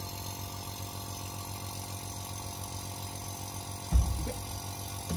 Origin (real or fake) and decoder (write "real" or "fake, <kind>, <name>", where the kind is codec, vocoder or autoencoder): real